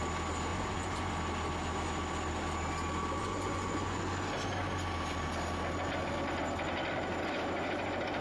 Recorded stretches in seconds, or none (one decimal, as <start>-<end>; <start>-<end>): 0.0-0.5; 1.1-3.2; 4.1-8.2